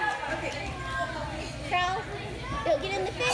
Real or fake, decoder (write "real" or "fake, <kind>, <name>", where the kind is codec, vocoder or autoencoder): real